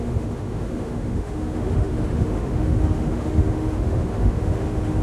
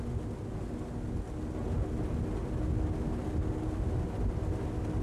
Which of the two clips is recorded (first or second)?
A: second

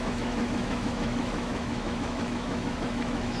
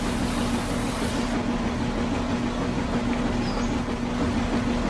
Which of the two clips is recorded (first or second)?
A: second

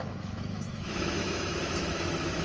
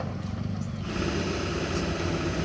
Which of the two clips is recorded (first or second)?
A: second